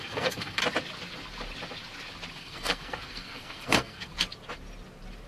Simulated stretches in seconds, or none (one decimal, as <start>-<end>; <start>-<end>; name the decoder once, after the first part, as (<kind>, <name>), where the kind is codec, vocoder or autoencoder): 0.0-0.6 (codec, SNAC); 2.3-4.1